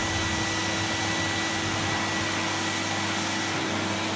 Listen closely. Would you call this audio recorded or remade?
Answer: recorded